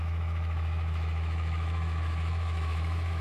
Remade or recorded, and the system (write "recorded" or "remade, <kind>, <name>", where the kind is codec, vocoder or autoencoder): remade, autoencoder, DAC-VAE